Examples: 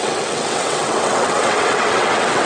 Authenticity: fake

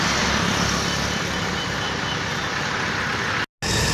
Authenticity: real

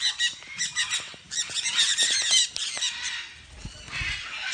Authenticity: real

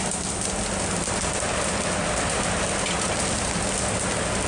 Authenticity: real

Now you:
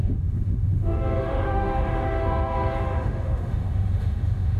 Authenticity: fake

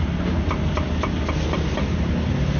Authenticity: real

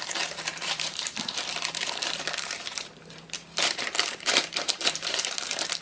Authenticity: fake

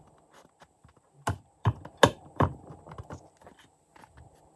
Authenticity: real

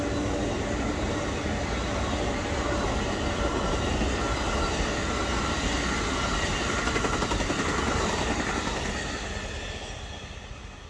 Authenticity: real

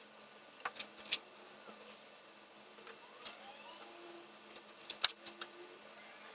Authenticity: real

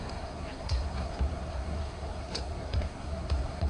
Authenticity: fake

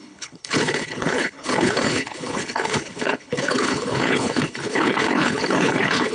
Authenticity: fake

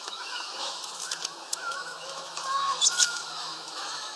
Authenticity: fake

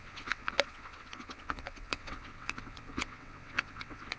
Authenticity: fake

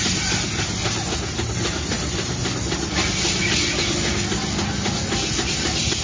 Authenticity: real